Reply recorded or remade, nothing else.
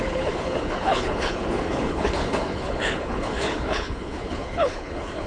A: remade